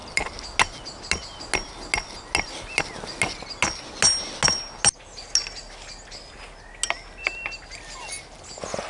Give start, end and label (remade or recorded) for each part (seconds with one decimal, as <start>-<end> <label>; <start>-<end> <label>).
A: 0.0-8.9 recorded

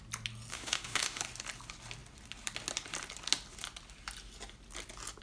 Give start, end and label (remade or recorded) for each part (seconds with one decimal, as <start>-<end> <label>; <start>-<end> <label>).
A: 0.0-0.5 recorded; 0.5-1.2 remade; 1.2-5.2 recorded

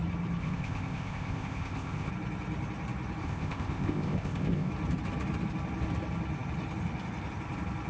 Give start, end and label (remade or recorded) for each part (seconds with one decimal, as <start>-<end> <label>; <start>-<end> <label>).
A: 0.0-0.4 recorded; 0.4-2.1 remade; 2.1-3.2 recorded; 3.2-4.7 remade; 4.7-7.9 recorded

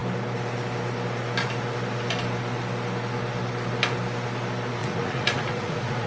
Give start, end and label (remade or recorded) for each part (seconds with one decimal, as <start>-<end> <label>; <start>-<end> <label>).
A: 0.0-4.8 recorded; 4.8-6.1 remade

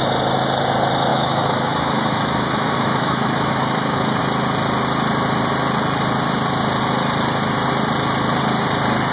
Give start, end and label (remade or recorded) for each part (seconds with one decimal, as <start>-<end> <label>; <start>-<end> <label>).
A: 0.0-1.1 recorded; 1.1-4.2 remade; 4.2-9.1 recorded

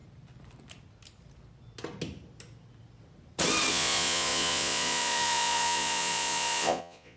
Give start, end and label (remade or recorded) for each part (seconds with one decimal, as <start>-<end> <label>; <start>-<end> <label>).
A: 0.0-3.7 recorded; 3.7-7.2 remade

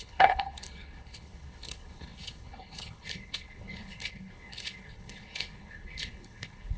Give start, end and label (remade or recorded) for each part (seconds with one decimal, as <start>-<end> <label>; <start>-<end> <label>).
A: 0.0-6.8 remade